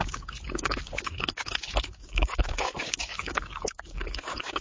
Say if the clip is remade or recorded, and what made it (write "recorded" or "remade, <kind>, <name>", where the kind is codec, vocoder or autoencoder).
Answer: remade, codec, DAC